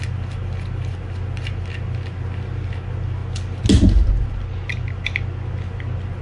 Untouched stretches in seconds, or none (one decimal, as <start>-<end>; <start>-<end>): 0.0-6.2